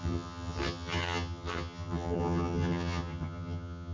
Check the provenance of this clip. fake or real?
fake